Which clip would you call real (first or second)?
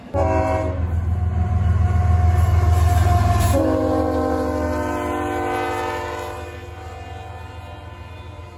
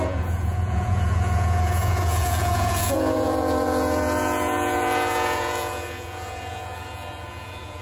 first